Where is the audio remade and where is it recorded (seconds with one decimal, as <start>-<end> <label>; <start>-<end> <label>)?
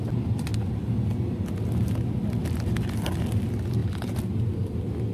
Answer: 0.0-5.1 recorded